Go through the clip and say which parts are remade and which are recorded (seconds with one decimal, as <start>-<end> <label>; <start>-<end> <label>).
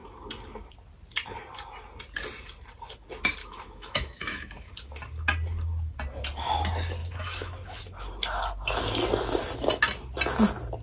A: 0.0-3.4 recorded; 3.4-4.7 remade; 4.7-7.0 recorded; 7.0-7.8 remade; 7.8-10.8 recorded